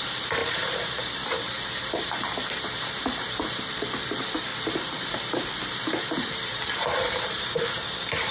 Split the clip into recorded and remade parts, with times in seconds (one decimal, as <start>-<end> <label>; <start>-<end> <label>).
0.0-0.4 recorded; 0.4-3.6 remade; 3.6-4.5 recorded; 4.5-7.5 remade; 7.5-8.3 recorded